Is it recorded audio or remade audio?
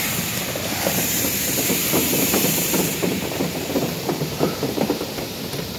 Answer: remade